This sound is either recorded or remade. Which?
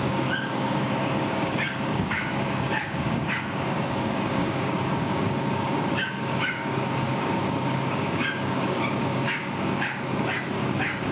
remade